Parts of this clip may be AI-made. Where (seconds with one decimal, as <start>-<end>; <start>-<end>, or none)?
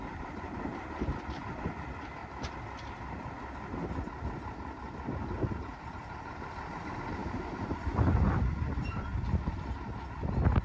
0.0-2.2; 5.8-9.1